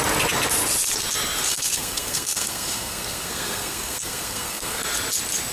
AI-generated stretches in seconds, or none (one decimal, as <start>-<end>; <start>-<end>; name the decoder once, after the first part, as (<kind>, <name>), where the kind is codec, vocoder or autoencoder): 1.5-4.8 (codec, SNAC)